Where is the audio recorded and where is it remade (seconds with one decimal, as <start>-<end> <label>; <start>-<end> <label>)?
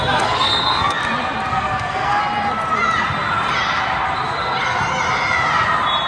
0.0-1.0 remade; 1.0-1.5 recorded; 1.5-2.2 remade; 2.2-6.1 recorded